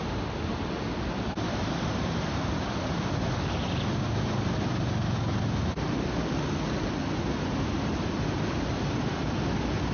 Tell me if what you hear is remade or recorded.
recorded